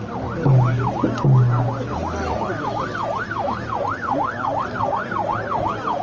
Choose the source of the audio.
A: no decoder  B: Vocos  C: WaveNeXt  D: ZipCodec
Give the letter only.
A